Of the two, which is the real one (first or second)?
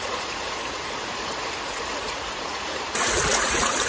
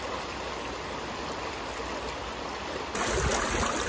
second